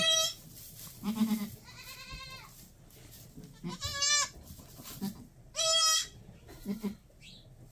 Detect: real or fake real